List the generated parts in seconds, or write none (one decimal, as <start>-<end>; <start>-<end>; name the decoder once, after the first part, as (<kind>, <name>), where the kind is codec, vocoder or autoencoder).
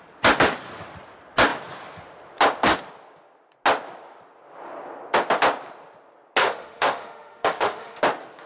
6.4-8.0 (autoencoder, DAC-VAE)